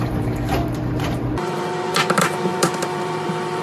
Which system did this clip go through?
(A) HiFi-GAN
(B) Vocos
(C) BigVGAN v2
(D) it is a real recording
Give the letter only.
C